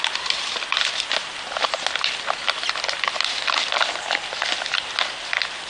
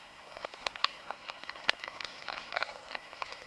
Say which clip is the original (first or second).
first